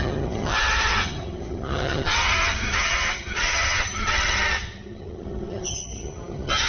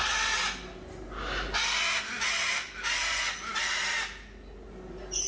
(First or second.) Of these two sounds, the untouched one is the second